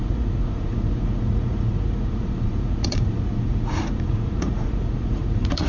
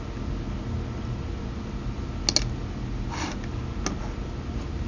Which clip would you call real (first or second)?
second